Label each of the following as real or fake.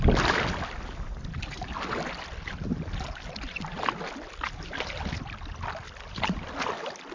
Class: real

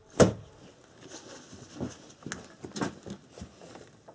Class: real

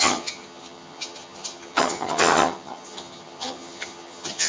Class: fake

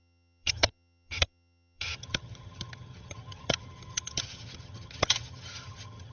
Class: fake